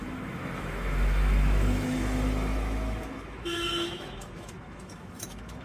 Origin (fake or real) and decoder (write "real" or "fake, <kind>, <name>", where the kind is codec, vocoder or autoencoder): fake, autoencoder, DAC-VAE